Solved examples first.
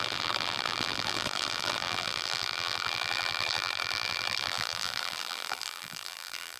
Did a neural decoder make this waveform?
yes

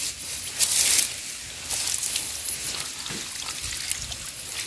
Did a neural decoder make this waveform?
no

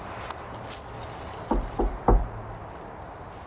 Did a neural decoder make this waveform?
no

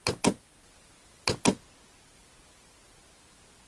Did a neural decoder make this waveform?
no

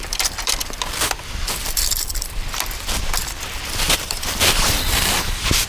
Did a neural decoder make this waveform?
yes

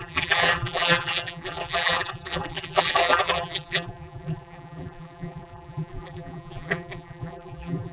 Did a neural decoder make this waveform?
yes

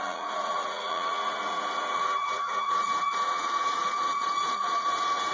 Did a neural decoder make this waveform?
yes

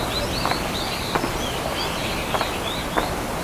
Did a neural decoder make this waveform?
no